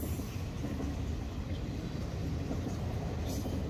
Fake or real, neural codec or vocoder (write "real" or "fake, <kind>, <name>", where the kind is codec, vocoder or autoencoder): real